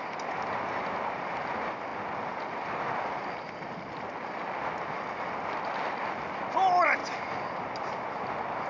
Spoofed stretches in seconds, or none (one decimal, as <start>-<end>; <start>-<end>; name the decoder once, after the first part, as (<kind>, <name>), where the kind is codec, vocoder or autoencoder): none